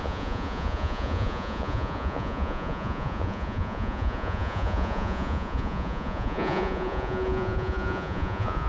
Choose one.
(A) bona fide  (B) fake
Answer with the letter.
B